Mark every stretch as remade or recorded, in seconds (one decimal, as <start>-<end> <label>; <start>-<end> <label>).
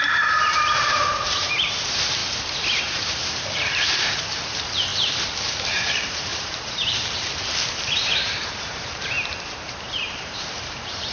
0.0-2.2 remade; 2.2-2.8 recorded; 2.8-4.9 remade; 4.9-5.4 recorded; 5.4-11.1 remade